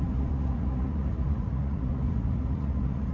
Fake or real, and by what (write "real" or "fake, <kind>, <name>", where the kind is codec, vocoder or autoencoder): fake, vocoder, Vocos